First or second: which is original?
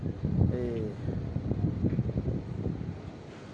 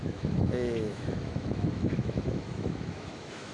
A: first